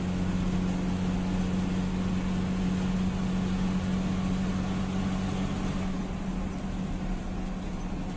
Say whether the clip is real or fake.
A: real